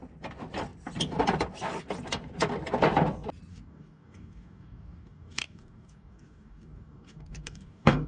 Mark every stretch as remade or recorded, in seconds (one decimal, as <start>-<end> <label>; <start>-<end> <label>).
0.0-3.5 recorded; 3.5-8.1 remade